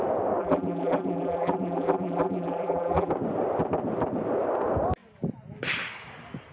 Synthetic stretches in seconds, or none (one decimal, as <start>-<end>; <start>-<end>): 0.4-3.1